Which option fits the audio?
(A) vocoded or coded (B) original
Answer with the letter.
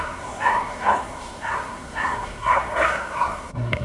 A